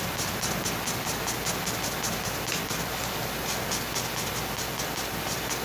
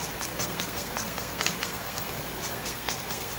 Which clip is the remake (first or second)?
second